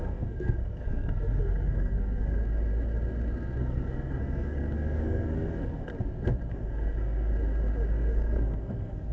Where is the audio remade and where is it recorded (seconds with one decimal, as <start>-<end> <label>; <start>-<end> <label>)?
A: 0.0-2.4 remade; 2.4-3.6 recorded; 3.6-5.9 remade; 5.9-6.5 recorded; 6.5-7.3 remade; 7.3-7.9 recorded; 7.9-9.1 remade